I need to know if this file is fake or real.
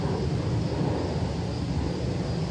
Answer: real